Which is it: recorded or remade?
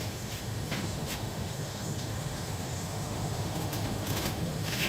remade